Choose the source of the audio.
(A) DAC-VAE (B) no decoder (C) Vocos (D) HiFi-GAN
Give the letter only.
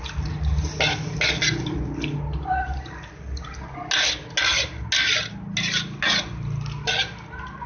B